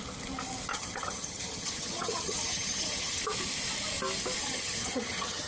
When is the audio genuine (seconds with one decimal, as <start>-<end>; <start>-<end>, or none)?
0.0-0.7; 3.2-4.4